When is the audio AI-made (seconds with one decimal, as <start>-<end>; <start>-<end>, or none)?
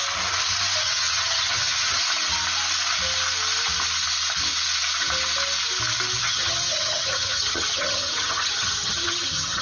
0.8-2.0; 6.2-9.6